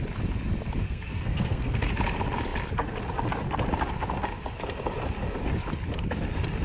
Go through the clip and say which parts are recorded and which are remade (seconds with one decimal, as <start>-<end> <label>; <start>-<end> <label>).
0.0-0.8 recorded; 0.8-1.9 remade; 1.9-6.6 recorded